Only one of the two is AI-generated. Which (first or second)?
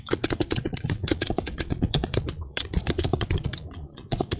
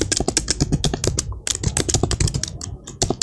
first